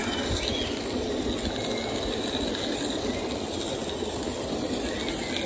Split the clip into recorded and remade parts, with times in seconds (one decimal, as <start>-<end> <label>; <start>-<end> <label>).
0.0-5.5 recorded